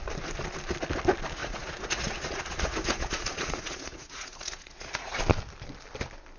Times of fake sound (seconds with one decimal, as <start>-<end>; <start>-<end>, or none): 1.4-5.2